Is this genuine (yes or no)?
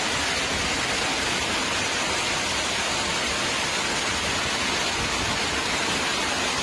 yes